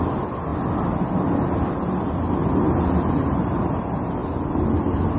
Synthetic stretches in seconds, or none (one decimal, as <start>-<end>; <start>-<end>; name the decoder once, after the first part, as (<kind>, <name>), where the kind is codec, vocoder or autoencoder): none